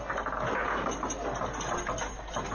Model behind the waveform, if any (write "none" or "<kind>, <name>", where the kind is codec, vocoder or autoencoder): none